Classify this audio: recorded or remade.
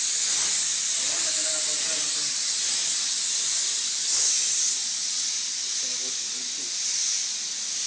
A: recorded